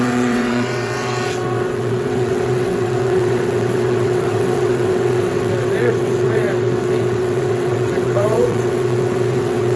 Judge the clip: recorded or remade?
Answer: remade